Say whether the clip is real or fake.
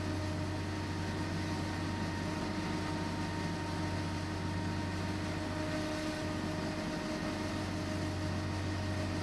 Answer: real